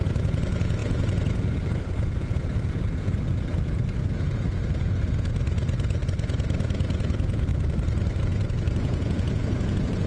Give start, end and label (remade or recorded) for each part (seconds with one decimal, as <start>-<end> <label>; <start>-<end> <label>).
0.0-7.5 remade; 7.5-8.2 recorded; 8.2-10.1 remade